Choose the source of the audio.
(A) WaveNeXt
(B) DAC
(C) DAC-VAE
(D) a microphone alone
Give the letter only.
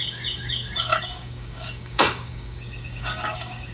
B